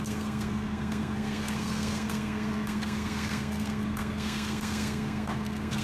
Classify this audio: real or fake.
fake